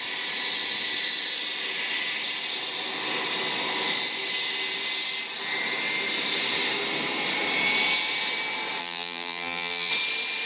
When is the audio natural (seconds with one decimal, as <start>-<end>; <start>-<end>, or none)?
0.0-8.8; 9.9-10.5